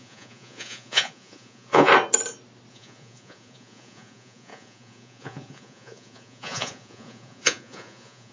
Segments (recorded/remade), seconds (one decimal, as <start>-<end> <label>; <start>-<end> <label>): 0.0-1.9 remade; 1.9-2.7 recorded; 2.7-8.3 remade